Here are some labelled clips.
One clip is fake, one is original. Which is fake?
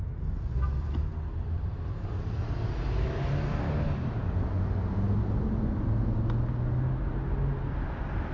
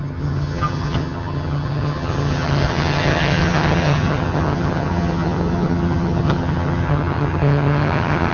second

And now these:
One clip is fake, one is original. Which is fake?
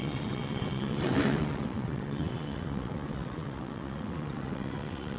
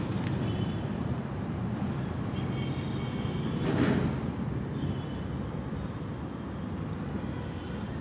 first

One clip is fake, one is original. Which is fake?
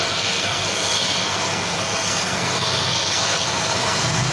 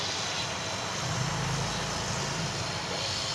first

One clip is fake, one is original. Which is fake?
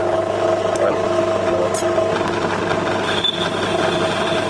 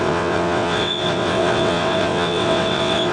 second